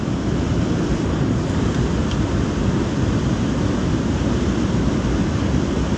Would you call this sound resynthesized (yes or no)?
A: no